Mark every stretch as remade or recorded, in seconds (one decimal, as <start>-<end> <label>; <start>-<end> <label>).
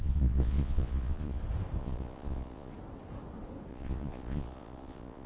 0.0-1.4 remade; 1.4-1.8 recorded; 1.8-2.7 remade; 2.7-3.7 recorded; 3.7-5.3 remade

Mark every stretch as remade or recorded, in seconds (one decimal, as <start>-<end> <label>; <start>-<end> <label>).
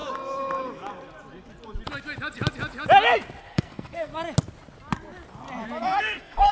0.0-3.4 recorded; 3.4-4.1 remade; 4.1-6.0 recorded; 6.0-6.5 remade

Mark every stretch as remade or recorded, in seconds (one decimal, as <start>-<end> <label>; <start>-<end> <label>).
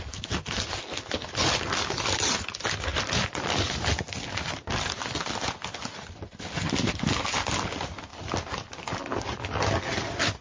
0.0-10.4 recorded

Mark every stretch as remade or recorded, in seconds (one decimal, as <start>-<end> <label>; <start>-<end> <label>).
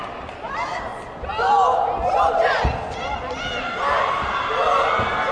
0.0-5.3 recorded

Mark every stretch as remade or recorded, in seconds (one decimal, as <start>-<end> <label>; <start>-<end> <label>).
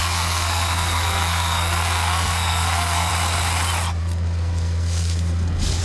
0.0-3.1 remade; 3.1-4.0 recorded; 4.0-5.8 remade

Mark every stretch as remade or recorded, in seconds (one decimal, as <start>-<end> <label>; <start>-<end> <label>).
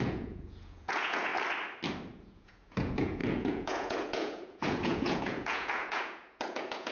0.0-1.3 remade; 1.3-2.1 recorded; 2.1-6.9 remade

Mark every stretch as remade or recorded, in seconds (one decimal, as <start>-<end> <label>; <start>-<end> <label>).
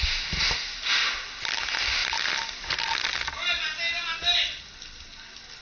0.0-5.6 recorded